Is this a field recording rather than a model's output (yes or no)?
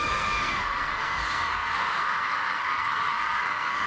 no